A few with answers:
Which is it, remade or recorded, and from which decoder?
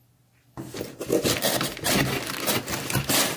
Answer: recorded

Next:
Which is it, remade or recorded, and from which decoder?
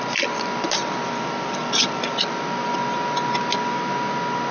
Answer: recorded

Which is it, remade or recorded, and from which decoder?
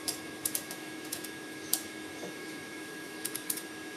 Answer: remade, autoencoder, DAC-VAE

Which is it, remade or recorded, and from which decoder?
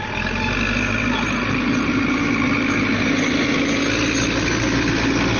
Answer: recorded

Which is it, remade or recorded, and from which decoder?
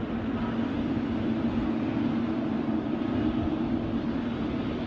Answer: recorded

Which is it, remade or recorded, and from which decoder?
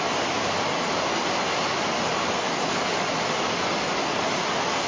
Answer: recorded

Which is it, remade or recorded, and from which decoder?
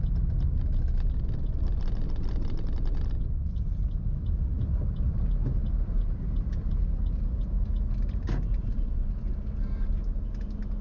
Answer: recorded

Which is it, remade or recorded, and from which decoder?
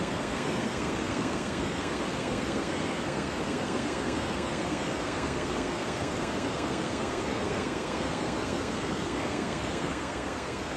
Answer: remade, codec, SNAC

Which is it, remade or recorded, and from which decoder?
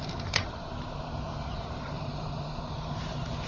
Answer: remade, vocoder, BigVGAN v2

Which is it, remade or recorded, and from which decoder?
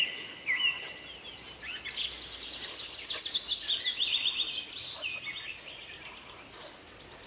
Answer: recorded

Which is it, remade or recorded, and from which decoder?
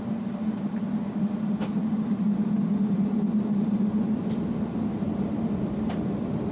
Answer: remade, vocoder, BigVGAN v2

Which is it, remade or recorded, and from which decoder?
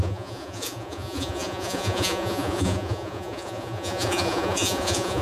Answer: remade, vocoder, Vocos